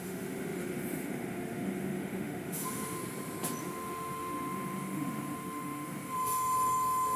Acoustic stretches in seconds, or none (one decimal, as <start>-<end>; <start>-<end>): 3.0-3.6

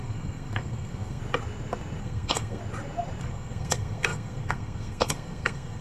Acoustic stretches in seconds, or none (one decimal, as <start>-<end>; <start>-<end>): 1.2-2.0; 2.6-3.2

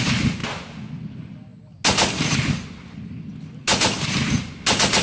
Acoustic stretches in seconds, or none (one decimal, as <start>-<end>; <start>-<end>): 0.0-5.0

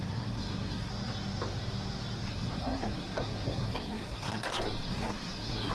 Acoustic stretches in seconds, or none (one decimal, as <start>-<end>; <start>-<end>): 0.9-2.3

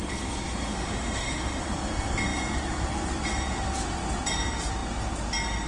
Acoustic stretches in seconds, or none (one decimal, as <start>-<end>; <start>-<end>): 0.0-0.7; 1.6-5.7

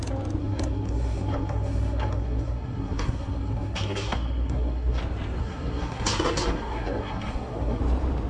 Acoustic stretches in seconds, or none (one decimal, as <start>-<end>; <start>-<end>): 0.0-0.4; 5.0-5.4; 7.8-8.3

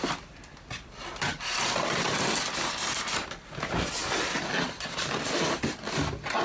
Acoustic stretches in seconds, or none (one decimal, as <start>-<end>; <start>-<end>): 0.0-6.4